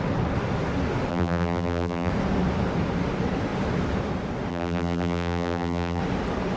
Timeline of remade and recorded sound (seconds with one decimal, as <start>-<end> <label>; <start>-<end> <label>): 0.0-1.1 recorded; 1.1-2.1 remade; 2.1-4.5 recorded; 4.5-6.0 remade; 6.0-6.6 recorded